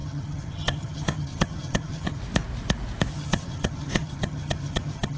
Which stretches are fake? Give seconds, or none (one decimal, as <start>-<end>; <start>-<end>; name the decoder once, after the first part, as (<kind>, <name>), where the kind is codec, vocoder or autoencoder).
0.0-2.2 (vocoder, HiFi-GAN); 3.1-5.2